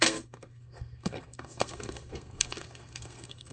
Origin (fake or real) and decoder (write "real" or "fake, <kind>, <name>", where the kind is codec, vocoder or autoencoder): fake, codec, SNAC